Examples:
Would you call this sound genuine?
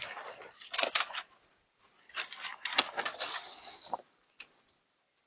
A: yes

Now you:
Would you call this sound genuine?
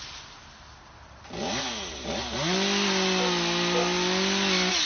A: yes